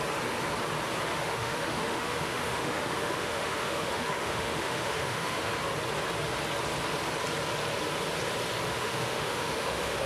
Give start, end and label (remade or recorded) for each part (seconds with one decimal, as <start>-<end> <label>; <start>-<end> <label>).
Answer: 0.0-1.1 recorded; 1.1-5.5 remade; 5.5-8.7 recorded; 8.7-10.1 remade